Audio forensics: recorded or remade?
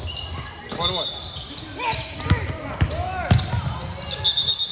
recorded